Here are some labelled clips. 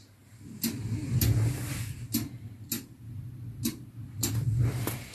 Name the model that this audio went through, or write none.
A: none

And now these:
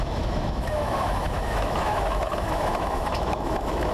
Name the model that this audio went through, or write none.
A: autoencoder, DAC-VAE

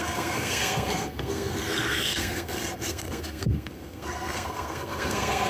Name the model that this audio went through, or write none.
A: codec, SNAC